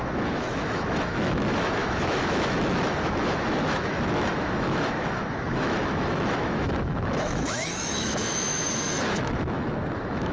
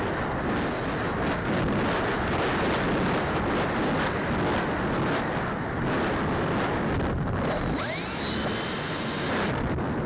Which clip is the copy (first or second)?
first